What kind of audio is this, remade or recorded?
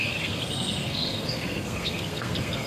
remade